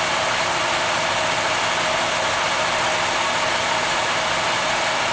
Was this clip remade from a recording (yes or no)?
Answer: no